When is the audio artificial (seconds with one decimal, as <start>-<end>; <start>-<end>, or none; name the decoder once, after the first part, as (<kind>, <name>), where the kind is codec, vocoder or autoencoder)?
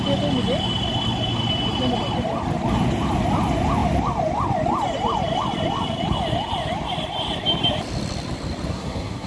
8.7-9.3 (codec, SNAC)